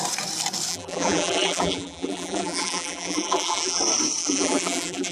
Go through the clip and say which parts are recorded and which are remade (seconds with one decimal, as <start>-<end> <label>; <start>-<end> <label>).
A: 0.0-0.7 recorded; 0.7-3.8 remade; 3.8-4.2 recorded; 4.2-5.1 remade